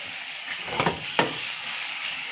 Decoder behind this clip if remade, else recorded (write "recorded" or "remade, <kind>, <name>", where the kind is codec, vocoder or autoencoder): remade, codec, DAC